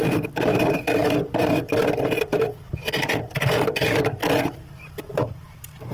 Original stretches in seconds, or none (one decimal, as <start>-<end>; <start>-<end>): none